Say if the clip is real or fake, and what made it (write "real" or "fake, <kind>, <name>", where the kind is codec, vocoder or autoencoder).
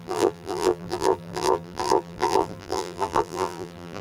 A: fake, vocoder, BigVGAN v2